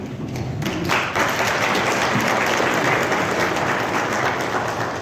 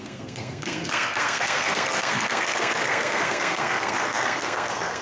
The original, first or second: first